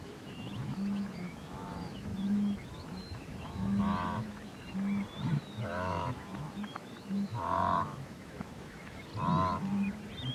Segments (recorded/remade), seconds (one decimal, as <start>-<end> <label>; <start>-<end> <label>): 0.0-4.5 remade; 4.5-5.3 recorded; 5.3-9.1 remade; 9.1-10.3 recorded